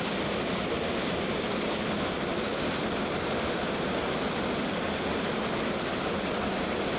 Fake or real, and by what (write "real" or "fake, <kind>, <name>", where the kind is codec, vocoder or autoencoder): real